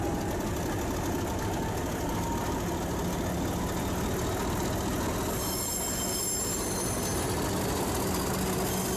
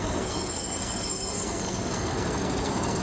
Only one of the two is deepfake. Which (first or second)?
second